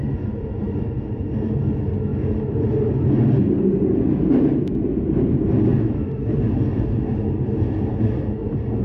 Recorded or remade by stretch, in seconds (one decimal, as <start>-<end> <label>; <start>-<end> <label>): 0.0-8.8 recorded